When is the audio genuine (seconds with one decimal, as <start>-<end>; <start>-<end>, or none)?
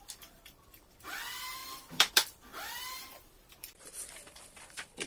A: none